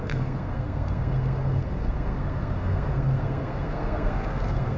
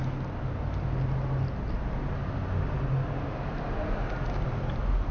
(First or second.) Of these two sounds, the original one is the second